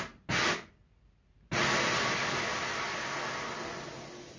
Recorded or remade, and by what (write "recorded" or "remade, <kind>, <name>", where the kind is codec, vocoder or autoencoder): recorded